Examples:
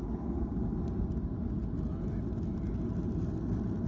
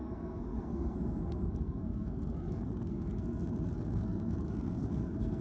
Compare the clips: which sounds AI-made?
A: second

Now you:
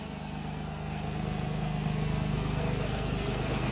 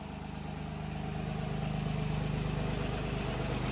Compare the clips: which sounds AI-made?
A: first